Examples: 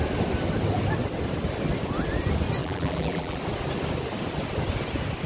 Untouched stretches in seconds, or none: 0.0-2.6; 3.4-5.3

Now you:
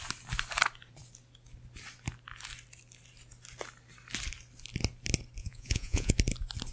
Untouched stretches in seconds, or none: 0.0-5.4; 6.1-6.7

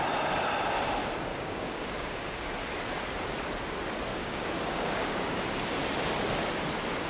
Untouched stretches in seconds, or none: 0.0-1.3; 2.5-4.1; 5.4-7.1

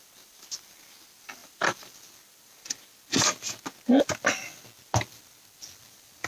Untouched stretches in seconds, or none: 0.0-6.3

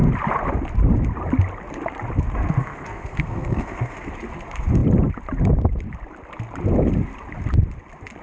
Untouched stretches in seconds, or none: 0.0-2.6; 4.1-8.2